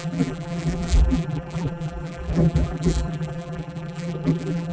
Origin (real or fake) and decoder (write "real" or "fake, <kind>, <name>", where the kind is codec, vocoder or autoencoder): fake, vocoder, BigVGAN v2